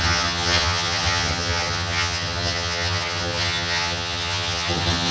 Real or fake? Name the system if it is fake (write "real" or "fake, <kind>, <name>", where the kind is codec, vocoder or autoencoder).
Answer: fake, vocoder, HiFi-GAN